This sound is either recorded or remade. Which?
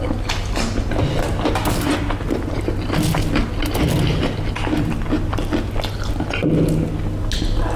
recorded